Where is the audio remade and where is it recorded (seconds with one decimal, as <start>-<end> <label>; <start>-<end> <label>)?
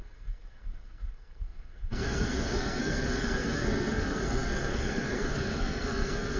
0.0-6.4 remade